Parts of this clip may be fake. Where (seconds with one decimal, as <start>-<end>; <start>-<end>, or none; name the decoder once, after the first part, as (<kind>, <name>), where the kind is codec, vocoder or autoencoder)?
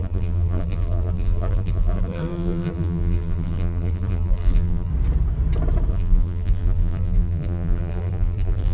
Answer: 0.0-4.9 (vocoder, BigVGAN v2); 5.9-8.7